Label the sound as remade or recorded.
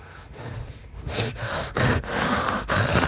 remade